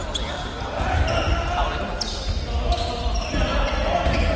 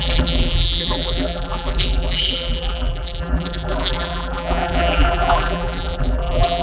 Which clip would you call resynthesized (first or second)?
second